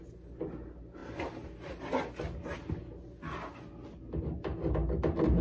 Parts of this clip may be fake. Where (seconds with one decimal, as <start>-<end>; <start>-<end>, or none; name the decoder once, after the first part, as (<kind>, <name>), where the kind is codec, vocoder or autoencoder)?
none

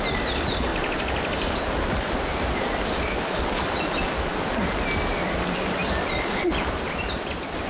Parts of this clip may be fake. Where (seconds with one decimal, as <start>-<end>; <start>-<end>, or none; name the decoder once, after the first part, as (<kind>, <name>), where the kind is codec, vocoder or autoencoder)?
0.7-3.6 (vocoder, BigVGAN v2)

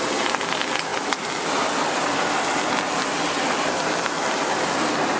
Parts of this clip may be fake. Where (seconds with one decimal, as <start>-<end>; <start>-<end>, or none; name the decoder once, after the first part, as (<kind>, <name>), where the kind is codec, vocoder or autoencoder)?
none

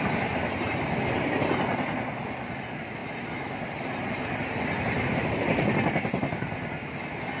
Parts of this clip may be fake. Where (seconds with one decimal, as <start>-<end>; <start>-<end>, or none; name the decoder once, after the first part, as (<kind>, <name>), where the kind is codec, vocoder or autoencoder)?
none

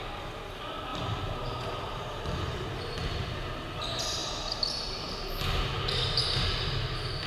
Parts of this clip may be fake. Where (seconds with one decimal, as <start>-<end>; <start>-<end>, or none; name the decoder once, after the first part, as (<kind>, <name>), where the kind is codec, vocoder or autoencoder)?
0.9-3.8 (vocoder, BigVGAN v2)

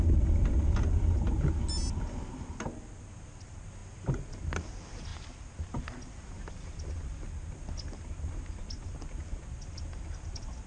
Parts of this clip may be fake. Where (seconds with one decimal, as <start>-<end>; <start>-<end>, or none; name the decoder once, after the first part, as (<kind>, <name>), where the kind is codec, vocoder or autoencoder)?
none